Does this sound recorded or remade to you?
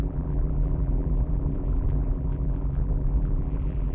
remade